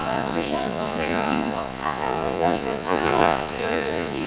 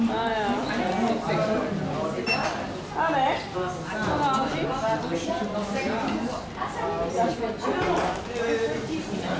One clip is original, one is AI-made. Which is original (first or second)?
second